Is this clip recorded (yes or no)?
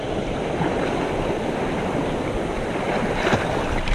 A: yes